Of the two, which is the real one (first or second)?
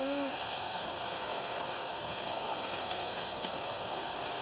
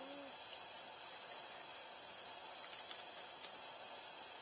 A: second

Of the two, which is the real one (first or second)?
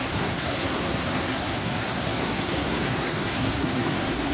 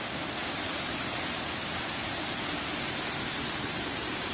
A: second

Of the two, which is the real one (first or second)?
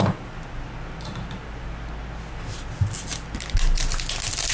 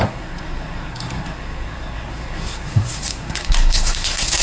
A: first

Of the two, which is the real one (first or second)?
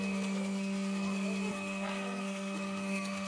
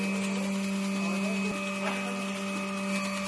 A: second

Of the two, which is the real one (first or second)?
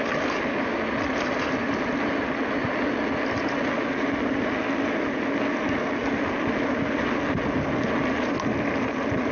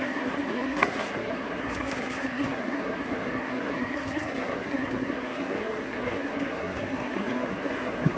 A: first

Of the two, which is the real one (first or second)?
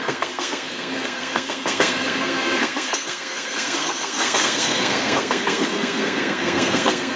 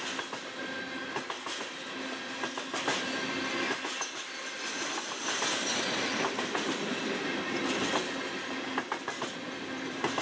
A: second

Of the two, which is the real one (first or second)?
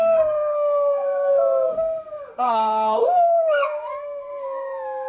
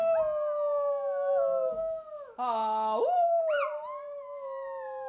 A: second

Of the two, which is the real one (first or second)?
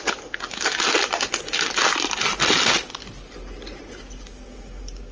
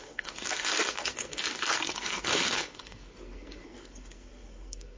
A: first